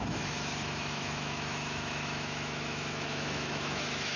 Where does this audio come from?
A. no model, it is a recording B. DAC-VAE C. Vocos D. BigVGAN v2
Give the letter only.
B